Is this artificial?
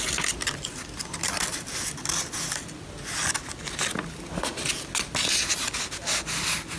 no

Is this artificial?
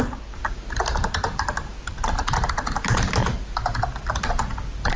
no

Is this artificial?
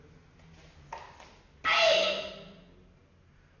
no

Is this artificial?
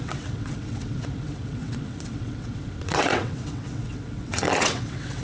yes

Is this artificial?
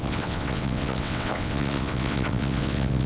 yes